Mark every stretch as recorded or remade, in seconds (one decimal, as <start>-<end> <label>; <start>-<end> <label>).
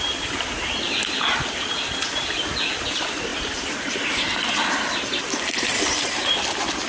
0.0-3.3 recorded; 3.3-4.5 remade; 4.5-6.9 recorded